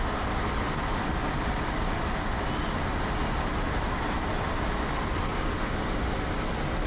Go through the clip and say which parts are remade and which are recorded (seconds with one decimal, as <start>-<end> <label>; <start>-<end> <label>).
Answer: 0.0-6.9 recorded

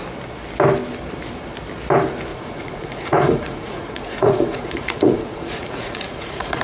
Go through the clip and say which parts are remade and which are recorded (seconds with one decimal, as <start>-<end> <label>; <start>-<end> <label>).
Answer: 0.0-2.3 recorded; 2.3-6.6 remade